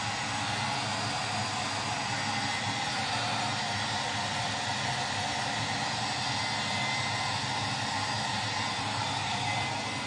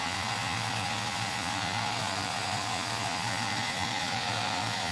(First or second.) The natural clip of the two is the first